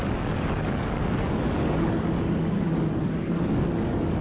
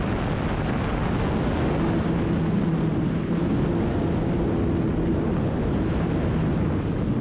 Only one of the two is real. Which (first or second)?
second